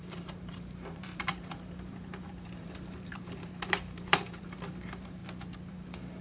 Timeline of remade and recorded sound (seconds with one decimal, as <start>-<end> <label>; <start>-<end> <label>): 0.0-5.2 remade; 5.2-5.7 recorded; 5.7-6.2 remade

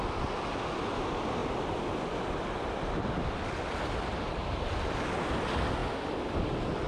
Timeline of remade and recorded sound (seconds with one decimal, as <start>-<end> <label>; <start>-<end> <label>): 0.0-6.9 recorded

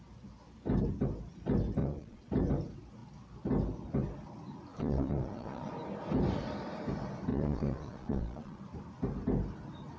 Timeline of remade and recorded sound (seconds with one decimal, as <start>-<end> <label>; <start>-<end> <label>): 0.0-1.8 recorded; 1.8-2.3 remade; 2.3-4.7 recorded; 4.7-5.7 remade; 5.7-7.3 recorded; 7.3-8.6 remade; 8.6-10.0 recorded

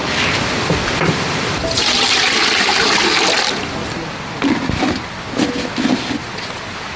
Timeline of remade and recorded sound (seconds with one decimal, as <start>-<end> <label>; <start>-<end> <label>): 0.0-7.0 recorded

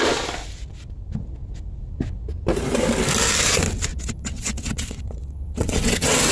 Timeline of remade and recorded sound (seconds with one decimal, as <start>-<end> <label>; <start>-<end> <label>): 0.0-3.9 recorded; 3.9-6.3 remade

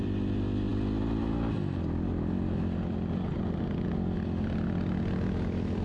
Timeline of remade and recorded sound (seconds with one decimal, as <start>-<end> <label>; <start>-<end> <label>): 0.0-5.8 recorded

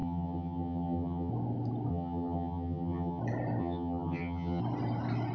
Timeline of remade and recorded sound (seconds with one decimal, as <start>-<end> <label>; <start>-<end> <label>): 0.0-1.3 remade; 1.3-1.9 recorded; 1.9-3.2 remade; 3.2-3.6 recorded; 3.6-4.6 remade; 4.6-5.3 recorded